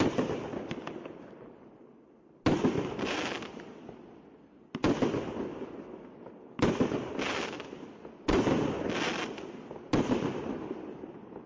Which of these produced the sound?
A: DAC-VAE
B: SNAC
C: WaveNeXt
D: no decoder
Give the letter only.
D